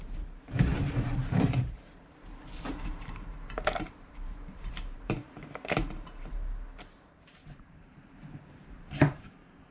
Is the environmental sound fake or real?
fake